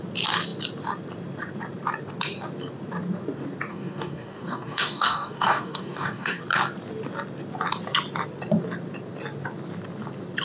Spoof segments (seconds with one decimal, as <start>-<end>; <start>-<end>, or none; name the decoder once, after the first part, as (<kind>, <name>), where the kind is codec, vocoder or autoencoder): 3.7-6.4 (codec, DAC)